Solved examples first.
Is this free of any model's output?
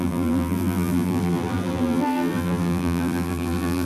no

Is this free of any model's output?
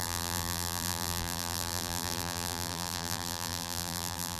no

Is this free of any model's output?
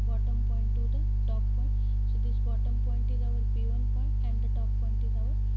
yes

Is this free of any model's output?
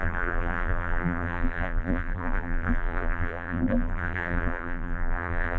no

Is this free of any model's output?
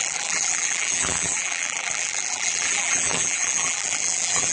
no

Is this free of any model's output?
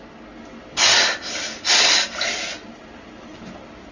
yes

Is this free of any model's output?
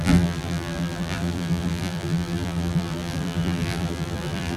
no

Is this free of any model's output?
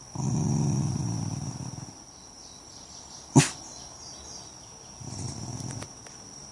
yes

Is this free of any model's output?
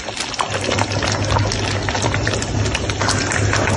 yes